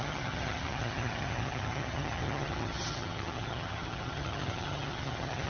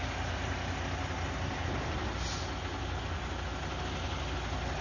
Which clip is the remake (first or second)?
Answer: first